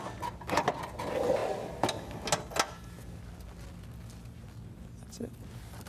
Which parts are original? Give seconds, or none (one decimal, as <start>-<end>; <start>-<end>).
0.0-5.9